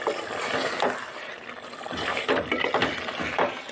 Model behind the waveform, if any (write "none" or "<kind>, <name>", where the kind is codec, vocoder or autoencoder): none